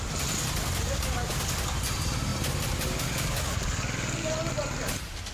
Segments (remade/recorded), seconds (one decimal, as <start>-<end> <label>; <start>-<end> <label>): 0.0-5.3 recorded